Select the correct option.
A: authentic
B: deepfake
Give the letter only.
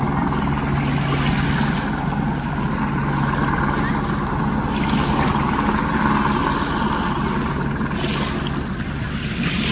A